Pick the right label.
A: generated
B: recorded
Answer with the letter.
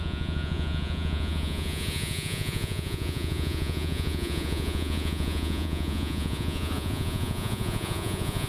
A